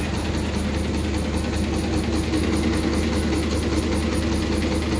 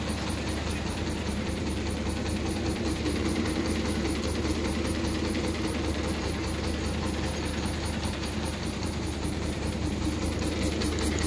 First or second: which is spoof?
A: second